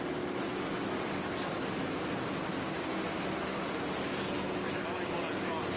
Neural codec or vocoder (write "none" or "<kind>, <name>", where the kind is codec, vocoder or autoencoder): none